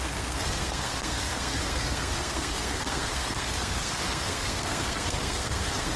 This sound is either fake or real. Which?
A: fake